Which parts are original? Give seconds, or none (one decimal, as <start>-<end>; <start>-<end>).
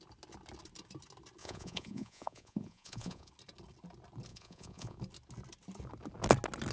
0.0-1.4; 3.3-4.3; 5.0-6.7